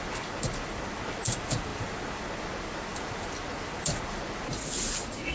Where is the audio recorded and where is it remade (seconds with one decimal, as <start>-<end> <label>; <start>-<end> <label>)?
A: 0.0-5.3 recorded